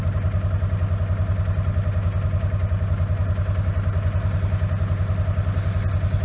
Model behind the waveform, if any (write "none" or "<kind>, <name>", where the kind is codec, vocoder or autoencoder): none